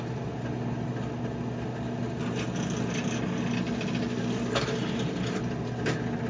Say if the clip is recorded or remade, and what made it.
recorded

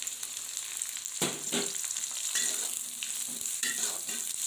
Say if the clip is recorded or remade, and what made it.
remade, vocoder, BigVGAN v2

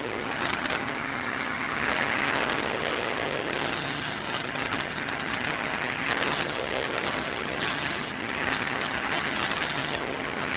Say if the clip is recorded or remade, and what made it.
remade, vocoder, HiFi-GAN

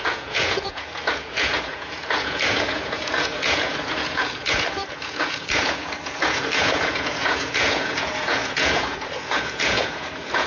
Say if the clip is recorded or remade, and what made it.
remade, vocoder, Vocos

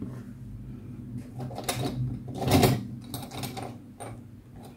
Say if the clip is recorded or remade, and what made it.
recorded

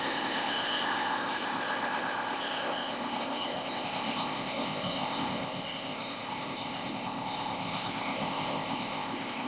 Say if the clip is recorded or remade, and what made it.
remade, codec, ZipCodec